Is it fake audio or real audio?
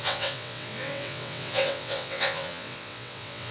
fake